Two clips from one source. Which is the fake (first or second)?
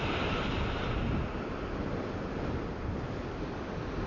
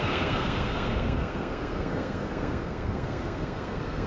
second